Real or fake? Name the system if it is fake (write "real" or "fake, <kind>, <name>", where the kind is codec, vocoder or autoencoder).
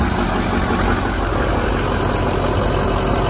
real